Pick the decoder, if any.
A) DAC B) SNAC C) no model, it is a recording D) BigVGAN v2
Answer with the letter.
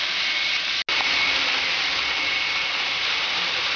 C